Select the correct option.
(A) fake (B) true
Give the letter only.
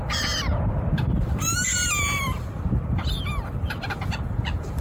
A